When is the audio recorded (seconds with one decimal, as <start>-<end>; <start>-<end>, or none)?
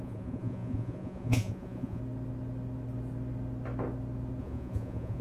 2.0-4.4